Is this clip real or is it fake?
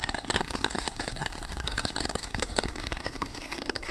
fake